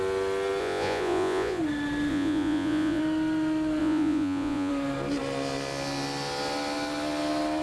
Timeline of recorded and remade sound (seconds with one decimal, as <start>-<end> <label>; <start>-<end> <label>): 0.0-0.6 recorded; 0.6-1.6 remade; 1.6-2.1 recorded; 2.1-3.0 remade; 3.0-3.8 recorded; 3.8-4.7 remade; 4.7-7.6 recorded